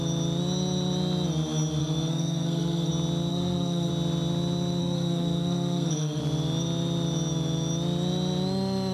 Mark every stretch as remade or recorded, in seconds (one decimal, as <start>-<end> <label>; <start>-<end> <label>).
0.0-1.8 recorded; 1.8-2.9 remade; 2.9-3.3 recorded; 3.3-3.9 remade; 3.9-4.8 recorded; 4.8-6.2 remade; 6.2-8.9 recorded